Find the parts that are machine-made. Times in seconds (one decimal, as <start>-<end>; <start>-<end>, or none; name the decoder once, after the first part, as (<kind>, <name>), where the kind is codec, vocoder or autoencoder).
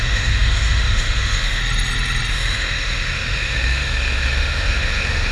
0.0-1.6 (autoencoder, DAC-VAE); 2.3-5.3